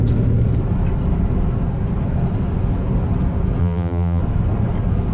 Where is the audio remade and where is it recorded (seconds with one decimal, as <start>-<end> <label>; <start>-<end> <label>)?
0.0-3.6 recorded; 3.6-4.2 remade; 4.2-5.1 recorded

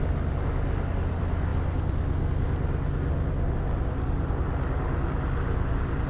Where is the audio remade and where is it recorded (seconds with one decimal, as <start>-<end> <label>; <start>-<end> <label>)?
0.0-6.1 recorded